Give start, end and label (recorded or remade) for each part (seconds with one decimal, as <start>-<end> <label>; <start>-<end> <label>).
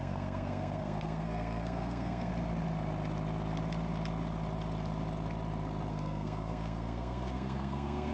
0.0-2.3 remade; 2.3-5.9 recorded; 5.9-8.1 remade